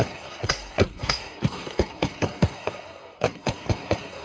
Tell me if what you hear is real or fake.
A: fake